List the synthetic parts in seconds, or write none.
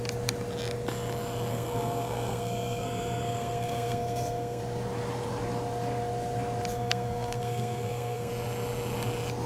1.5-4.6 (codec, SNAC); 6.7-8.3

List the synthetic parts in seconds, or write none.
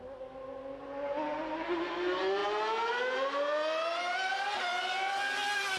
none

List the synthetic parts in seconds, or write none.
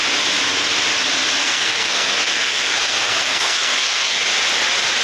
1.4-4.2 (codec, SNAC)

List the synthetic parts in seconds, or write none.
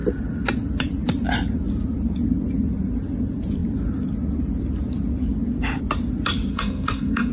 6.5-7.3 (codec, SNAC)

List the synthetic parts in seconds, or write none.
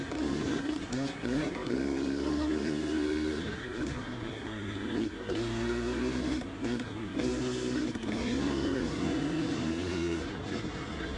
0.0-11.2 (codec, SNAC)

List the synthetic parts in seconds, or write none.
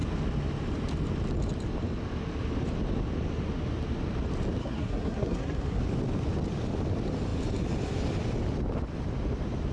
4.6-5.8 (codec, SNAC)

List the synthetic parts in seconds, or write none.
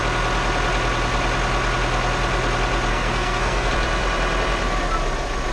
2.9-3.7 (codec, SNAC)